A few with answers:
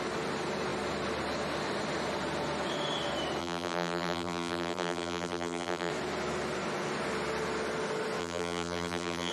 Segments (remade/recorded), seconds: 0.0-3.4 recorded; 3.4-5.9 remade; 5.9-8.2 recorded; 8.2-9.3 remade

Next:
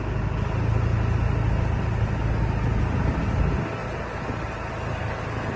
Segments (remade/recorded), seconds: 0.0-5.6 recorded

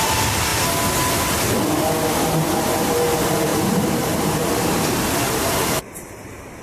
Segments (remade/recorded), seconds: 0.0-0.5 remade; 0.5-2.1 recorded; 2.1-6.6 remade

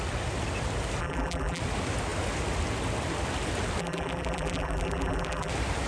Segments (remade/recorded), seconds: 0.0-1.0 recorded; 1.0-1.6 remade; 1.6-3.8 recorded; 3.8-5.5 remade; 5.5-5.9 recorded

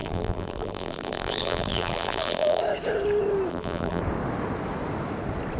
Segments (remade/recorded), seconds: 0.0-2.6 remade; 2.6-3.5 recorded; 3.5-4.0 remade; 4.0-5.6 recorded